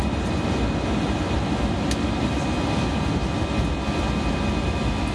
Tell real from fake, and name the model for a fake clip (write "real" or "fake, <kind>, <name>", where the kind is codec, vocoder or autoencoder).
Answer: real